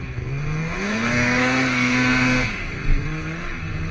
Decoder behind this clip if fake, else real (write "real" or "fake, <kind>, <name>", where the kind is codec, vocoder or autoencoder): fake, codec, SNAC